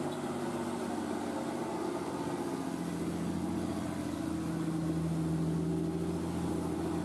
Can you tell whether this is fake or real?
real